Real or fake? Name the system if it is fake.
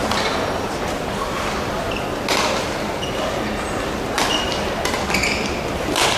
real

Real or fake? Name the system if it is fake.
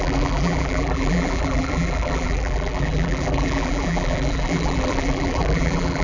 fake, vocoder, BigVGAN v2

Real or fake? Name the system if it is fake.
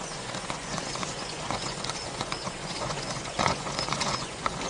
fake, vocoder, Vocos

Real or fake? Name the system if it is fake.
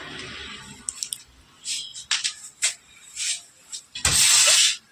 real